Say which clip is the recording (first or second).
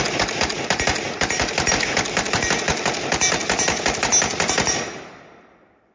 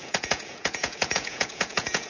first